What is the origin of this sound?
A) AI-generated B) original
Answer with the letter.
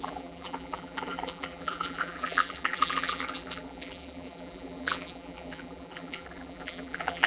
A